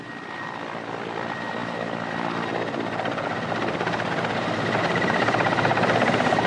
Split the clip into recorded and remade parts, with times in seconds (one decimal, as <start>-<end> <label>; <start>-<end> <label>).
0.0-6.5 recorded